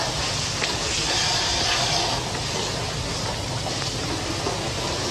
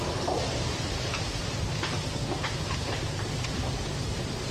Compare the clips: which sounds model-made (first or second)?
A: second